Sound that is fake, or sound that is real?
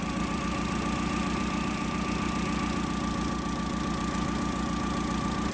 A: fake